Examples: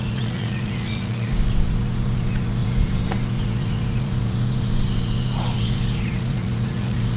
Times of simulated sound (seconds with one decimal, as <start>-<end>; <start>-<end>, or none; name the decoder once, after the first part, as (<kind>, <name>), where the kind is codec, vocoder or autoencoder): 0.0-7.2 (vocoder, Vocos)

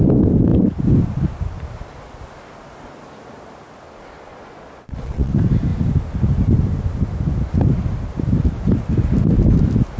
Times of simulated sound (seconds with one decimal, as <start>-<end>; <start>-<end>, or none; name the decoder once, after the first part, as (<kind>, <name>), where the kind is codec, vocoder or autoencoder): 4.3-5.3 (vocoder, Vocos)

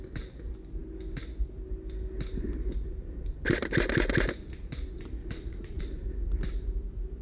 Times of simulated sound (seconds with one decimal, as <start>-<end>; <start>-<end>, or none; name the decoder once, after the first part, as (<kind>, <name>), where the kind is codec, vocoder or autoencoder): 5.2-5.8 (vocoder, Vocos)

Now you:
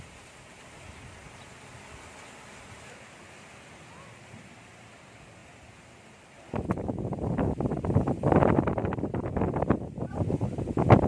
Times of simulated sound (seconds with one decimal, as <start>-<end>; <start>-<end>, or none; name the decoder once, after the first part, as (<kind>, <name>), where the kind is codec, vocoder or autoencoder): none

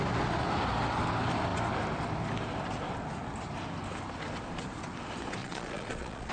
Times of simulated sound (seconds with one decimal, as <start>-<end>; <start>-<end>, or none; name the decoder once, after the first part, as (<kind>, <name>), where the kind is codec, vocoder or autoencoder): 5.4-6.3 (vocoder, Vocos)